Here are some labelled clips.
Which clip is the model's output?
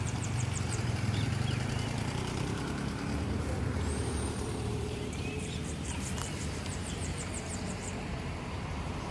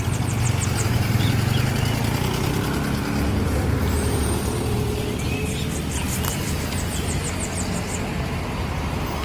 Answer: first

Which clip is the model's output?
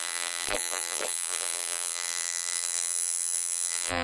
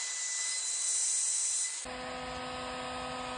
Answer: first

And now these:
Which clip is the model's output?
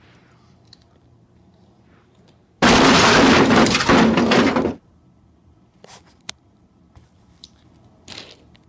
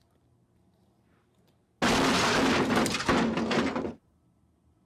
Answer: first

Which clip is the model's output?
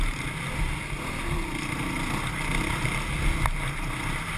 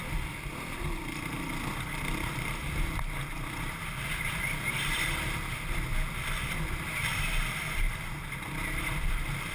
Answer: second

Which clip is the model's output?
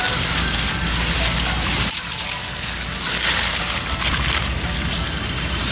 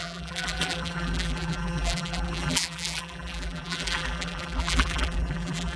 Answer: second